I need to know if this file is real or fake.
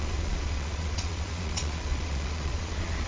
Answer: fake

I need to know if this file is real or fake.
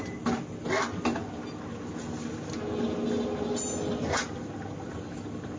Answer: real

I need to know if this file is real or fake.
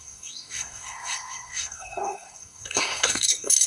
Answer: fake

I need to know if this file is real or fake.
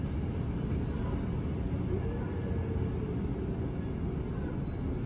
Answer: real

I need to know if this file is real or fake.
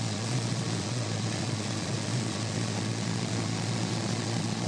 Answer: fake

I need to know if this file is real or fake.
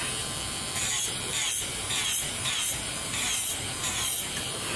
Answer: fake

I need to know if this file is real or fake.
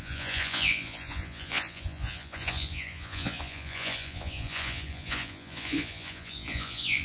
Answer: fake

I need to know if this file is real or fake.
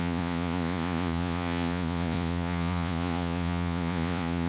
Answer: fake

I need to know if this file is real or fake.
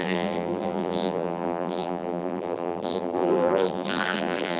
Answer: fake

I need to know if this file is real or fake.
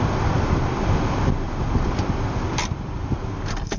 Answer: fake